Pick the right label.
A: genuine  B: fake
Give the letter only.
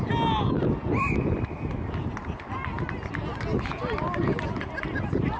A